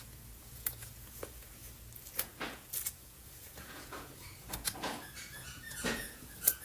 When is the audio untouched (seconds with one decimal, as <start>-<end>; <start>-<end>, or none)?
1.6-2.1